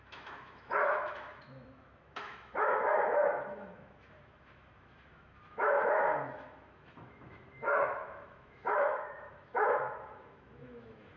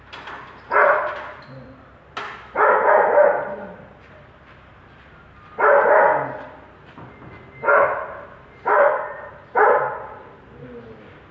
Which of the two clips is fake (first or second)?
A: first